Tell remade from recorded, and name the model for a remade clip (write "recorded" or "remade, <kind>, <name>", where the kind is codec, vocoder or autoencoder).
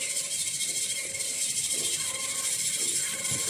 remade, vocoder, BigVGAN v2